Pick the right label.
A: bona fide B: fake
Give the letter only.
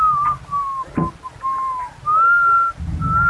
A